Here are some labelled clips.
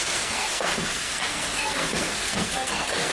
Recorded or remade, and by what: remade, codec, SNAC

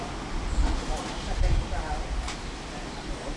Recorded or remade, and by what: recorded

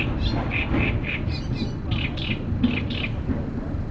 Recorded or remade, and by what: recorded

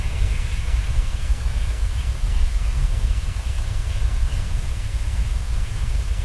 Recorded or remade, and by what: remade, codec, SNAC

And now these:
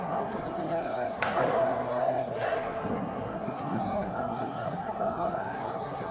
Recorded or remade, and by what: remade, codec, SNAC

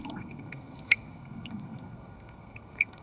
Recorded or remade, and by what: remade, codec, SNAC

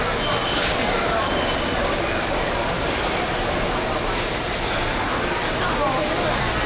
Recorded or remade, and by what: recorded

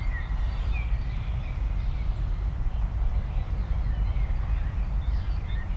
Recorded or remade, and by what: recorded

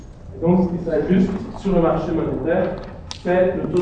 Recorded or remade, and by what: recorded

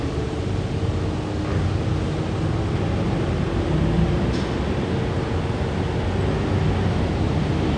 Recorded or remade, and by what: recorded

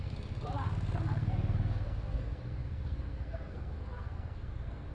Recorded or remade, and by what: remade, codec, SNAC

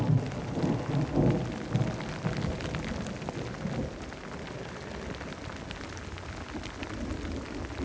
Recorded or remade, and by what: recorded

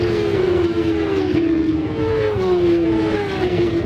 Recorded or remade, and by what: remade, codec, SNAC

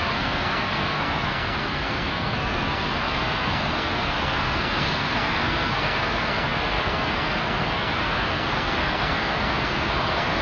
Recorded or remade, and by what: remade, codec, SNAC